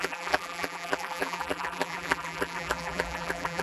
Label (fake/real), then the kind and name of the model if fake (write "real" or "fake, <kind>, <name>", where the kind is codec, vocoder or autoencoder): fake, vocoder, BigVGAN v2